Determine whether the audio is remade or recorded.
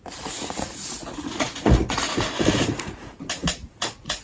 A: remade